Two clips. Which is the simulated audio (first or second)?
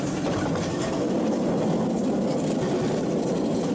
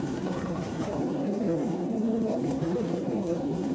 second